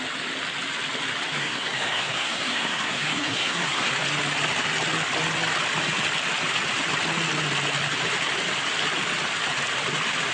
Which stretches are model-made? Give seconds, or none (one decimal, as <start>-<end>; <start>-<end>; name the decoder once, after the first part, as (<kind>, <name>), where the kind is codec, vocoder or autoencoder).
1.4-3.9 (codec, SNAC)